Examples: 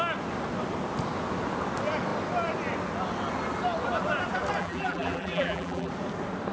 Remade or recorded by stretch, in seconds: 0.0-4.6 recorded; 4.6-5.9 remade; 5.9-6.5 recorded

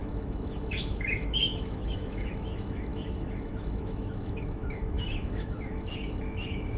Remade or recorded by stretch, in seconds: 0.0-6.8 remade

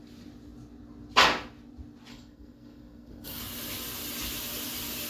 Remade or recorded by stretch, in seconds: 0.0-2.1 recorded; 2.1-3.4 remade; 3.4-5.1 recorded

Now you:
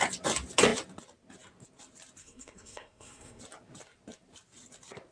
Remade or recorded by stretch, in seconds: 0.0-2.2 recorded; 2.2-3.4 remade; 3.4-5.1 recorded